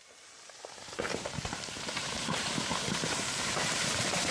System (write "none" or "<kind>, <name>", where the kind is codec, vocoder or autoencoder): vocoder, BigVGAN v2